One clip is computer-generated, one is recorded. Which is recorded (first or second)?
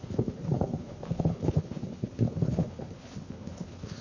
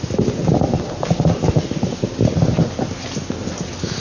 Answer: second